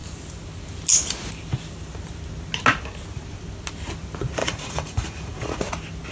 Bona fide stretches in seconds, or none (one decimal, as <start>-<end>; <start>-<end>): 0.0-4.4; 5.6-6.1